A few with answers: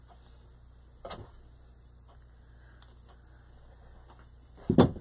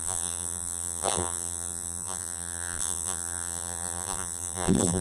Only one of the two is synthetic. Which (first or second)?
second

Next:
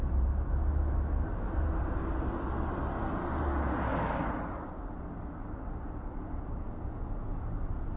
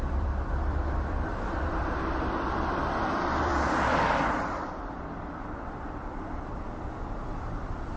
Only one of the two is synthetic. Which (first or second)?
second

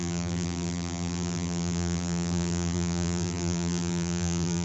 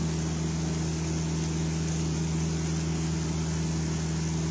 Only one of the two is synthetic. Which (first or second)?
first